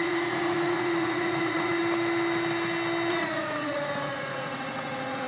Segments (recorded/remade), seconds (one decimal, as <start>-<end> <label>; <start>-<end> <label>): 0.0-1.8 remade; 1.8-3.1 recorded; 3.1-5.3 remade